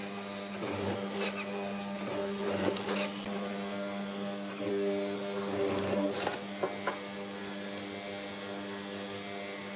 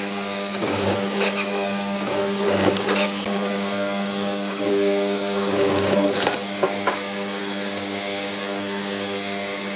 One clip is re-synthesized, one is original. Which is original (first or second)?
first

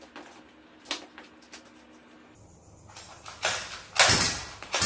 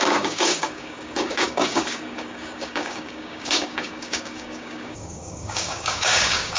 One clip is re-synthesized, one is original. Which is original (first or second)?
first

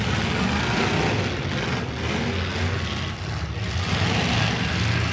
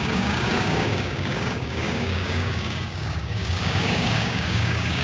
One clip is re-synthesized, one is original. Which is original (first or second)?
first